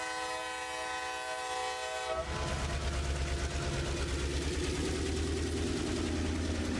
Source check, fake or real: real